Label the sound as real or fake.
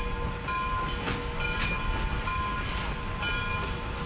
real